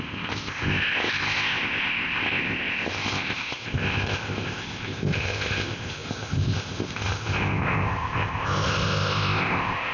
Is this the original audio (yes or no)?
no